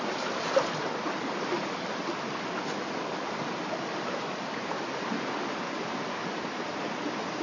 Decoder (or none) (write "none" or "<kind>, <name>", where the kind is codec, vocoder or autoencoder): none